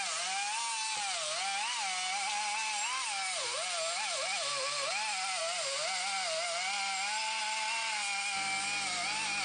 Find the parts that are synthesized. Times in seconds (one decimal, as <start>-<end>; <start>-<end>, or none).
none

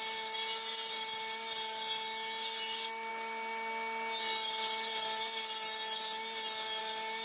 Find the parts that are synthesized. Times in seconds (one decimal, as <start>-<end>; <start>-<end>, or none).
none